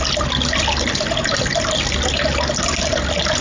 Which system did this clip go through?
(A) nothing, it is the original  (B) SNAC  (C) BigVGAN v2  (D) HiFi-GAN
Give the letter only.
A